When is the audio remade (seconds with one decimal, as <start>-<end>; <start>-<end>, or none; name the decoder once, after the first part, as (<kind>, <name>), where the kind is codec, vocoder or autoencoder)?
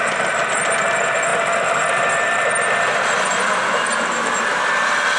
none